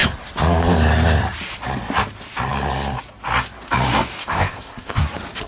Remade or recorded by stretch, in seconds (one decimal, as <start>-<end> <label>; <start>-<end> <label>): 0.0-4.2 recorded; 4.2-5.0 remade; 5.0-5.5 recorded